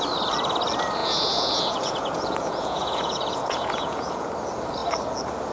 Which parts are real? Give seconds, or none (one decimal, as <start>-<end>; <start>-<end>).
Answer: 0.0-1.0; 4.3-5.5